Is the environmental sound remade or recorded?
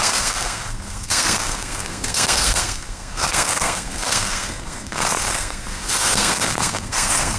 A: remade